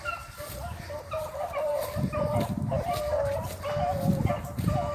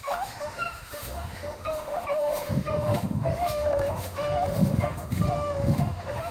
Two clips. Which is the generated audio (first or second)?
second